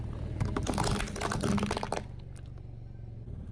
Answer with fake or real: real